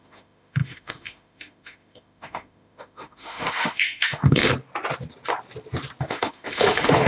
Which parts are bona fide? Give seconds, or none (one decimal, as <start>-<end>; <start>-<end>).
4.5-6.0